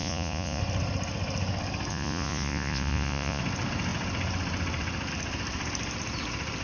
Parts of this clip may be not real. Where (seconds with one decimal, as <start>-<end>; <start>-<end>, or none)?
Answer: 0.0-0.6; 1.9-3.4